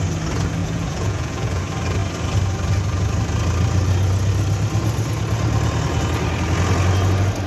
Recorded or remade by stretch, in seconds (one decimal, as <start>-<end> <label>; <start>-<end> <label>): 0.0-0.6 recorded; 0.6-1.6 remade; 1.6-7.5 recorded